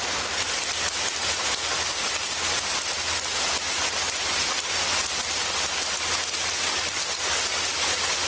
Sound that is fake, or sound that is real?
real